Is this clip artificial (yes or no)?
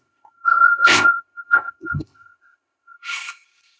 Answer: yes